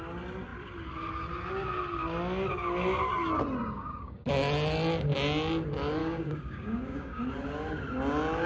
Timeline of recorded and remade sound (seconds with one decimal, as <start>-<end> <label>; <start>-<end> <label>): 0.0-3.6 recorded; 3.6-4.3 remade; 4.3-6.0 recorded; 6.0-7.2 remade; 7.2-8.5 recorded